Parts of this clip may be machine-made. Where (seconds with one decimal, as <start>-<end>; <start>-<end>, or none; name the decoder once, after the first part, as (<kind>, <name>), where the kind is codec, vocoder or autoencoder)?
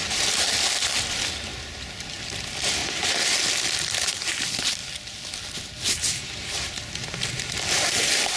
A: 0.0-1.5 (vocoder, BigVGAN v2); 2.2-2.8; 4.3-4.8; 6.5-8.4